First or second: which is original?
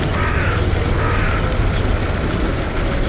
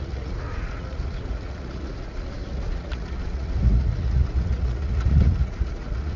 first